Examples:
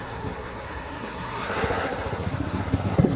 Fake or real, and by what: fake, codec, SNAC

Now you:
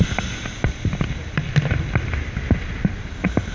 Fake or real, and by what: real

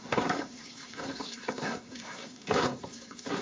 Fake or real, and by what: fake, codec, SNAC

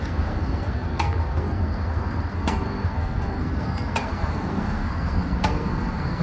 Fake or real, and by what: fake, codec, SNAC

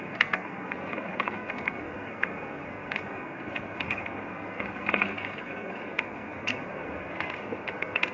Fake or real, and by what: fake, codec, SNAC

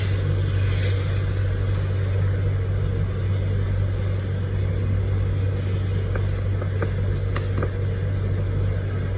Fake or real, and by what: real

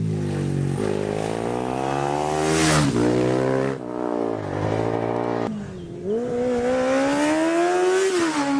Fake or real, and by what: real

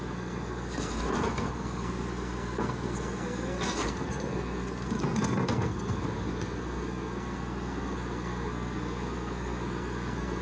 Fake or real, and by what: fake, codec, SNAC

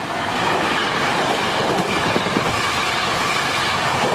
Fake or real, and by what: real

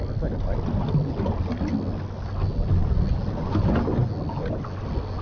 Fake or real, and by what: real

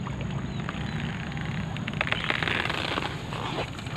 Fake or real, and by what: real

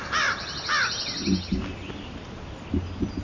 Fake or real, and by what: real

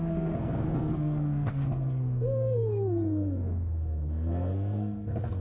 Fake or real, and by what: fake, codec, SNAC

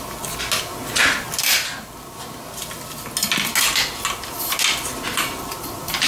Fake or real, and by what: real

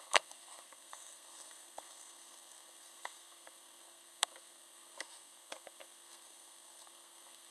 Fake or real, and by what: fake, codec, SNAC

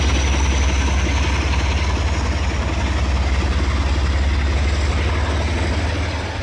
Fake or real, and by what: real